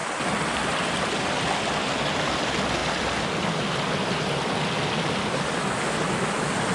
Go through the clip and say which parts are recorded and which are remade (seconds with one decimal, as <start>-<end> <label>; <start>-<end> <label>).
0.0-6.7 recorded